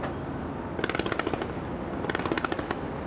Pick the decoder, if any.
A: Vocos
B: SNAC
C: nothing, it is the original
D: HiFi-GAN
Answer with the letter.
C